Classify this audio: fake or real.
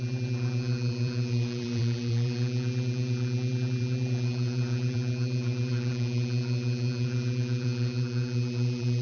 fake